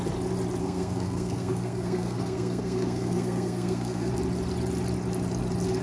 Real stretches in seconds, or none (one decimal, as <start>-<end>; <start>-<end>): 0.0-0.6; 4.1-5.8